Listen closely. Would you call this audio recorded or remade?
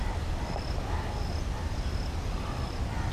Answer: recorded